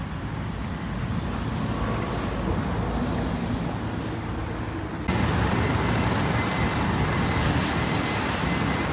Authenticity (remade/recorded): recorded